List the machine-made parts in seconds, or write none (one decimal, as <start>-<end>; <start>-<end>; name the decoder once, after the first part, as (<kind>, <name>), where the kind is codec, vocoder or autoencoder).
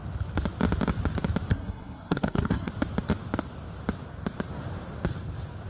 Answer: 1.5-2.7 (codec, SNAC)